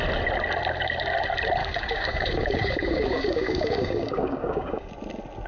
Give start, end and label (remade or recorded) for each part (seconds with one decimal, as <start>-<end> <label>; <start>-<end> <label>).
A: 0.0-1.6 recorded; 1.6-4.9 remade; 4.9-5.5 recorded